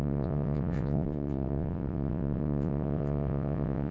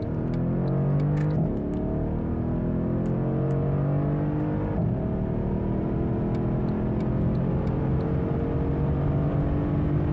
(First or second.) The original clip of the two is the second